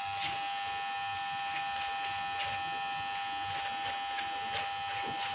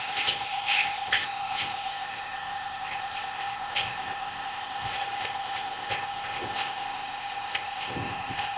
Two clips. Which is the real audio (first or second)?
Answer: first